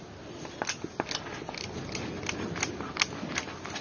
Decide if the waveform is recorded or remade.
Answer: recorded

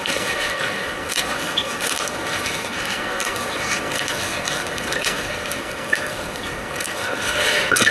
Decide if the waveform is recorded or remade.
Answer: remade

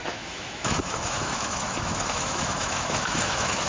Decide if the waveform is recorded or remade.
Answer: remade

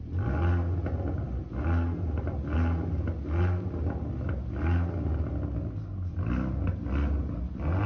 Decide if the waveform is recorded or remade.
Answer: recorded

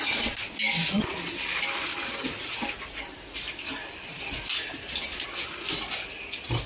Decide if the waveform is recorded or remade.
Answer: recorded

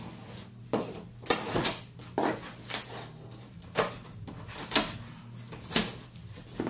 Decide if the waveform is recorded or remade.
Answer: recorded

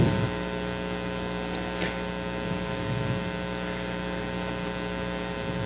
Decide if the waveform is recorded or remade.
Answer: recorded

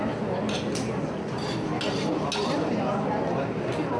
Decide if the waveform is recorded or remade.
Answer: recorded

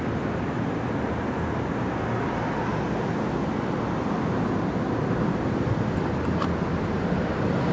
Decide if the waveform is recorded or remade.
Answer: recorded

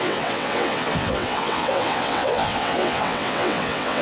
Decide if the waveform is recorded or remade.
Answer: remade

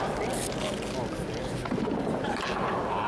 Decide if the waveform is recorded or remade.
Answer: recorded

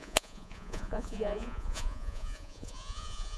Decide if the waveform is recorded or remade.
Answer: remade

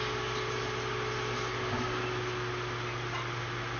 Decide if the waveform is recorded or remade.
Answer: recorded